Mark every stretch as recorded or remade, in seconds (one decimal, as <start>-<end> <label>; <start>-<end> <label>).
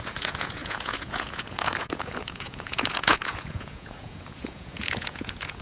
0.0-5.6 remade